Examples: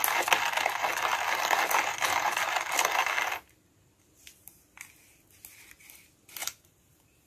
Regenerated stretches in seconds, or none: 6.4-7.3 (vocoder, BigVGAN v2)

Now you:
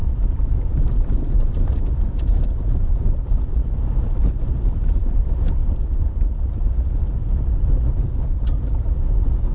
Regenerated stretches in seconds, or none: 0.0-3.7 (vocoder, BigVGAN v2); 5.6-6.7

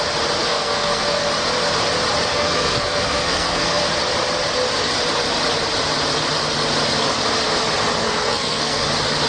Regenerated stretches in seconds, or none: 0.4-1.2 (codec, SNAC); 2.3-3.8; 8.0-8.9

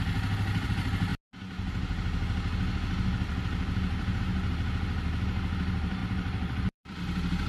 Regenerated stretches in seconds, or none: 6.0-7.0 (vocoder, BigVGAN v2)

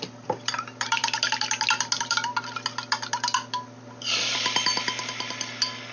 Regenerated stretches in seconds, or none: none

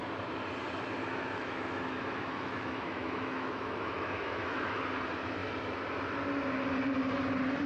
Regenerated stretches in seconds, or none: 1.0-4.8 (autoencoder, DAC-VAE)

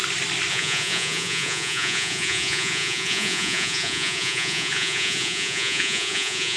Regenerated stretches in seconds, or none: 0.5-6.6 (vocoder, Vocos)